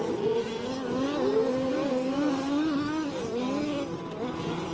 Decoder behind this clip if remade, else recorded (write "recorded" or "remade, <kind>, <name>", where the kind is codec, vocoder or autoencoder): recorded